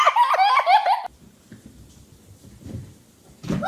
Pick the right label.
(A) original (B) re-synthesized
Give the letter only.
A